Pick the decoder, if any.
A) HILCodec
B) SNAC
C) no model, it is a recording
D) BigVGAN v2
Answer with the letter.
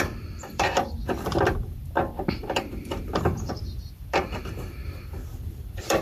D